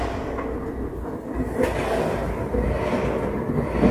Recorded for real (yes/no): yes